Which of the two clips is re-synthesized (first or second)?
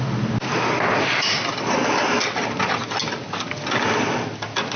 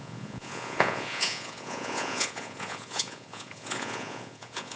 second